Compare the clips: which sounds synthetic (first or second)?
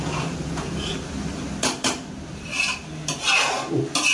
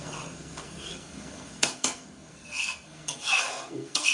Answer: second